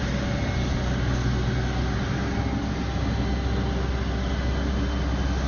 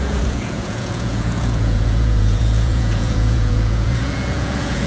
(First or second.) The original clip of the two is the first